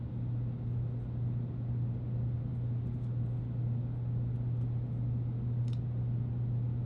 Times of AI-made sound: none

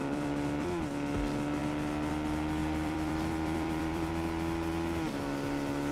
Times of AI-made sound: 0.0-0.8; 2.6-4.1

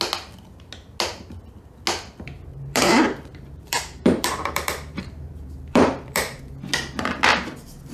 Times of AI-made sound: 2.5-6.4

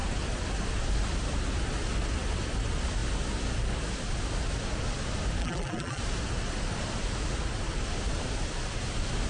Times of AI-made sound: 5.4-6.0

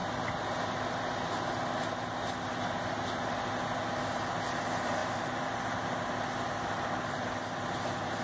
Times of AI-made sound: 5.0-5.6

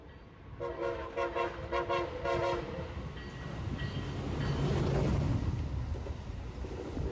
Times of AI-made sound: none